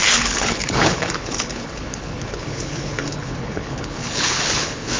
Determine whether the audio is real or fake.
fake